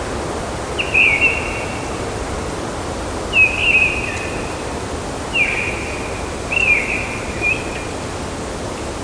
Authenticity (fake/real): real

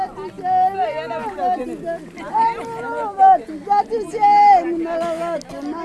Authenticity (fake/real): real